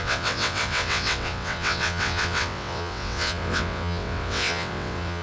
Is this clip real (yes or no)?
no